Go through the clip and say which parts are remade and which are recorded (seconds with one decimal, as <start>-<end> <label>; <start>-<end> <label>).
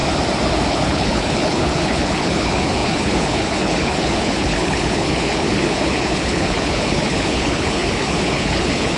0.0-0.7 recorded; 0.7-9.0 remade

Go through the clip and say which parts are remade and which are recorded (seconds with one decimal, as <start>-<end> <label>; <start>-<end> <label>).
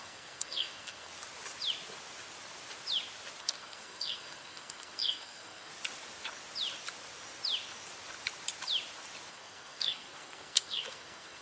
0.0-1.1 remade; 1.1-3.4 recorded; 3.4-5.7 remade; 5.7-9.3 recorded; 9.3-11.4 remade